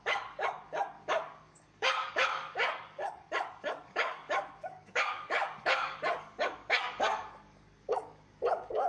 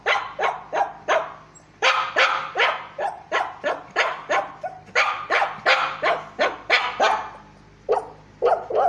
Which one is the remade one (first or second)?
first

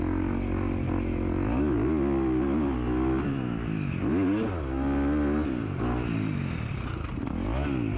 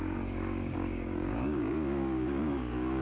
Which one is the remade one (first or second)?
second